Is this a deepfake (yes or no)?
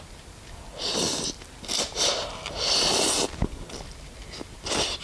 no